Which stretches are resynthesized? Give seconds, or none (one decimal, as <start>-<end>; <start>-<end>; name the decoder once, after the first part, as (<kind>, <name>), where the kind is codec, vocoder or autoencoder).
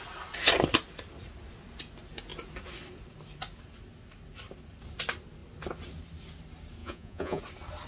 6.8-7.4 (vocoder, Vocos)